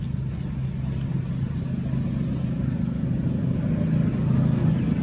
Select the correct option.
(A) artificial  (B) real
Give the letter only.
B